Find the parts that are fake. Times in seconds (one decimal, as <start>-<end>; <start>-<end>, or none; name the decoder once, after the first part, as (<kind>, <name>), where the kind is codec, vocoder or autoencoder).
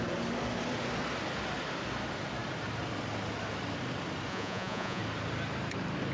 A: 4.3-5.0 (vocoder, Vocos)